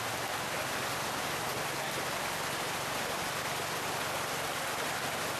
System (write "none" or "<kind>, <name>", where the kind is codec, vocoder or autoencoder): none